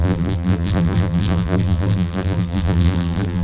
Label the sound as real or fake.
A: fake